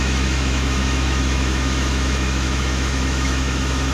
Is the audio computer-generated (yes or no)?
yes